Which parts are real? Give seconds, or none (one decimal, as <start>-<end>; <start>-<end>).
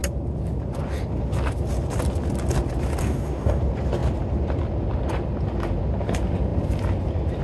0.0-3.0; 3.6-7.4